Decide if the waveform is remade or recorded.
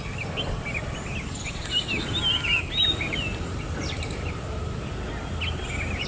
recorded